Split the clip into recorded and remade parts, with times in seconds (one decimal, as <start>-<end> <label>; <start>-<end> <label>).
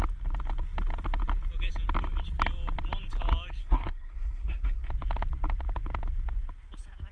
0.0-3.6 recorded; 3.6-4.9 remade; 4.9-7.1 recorded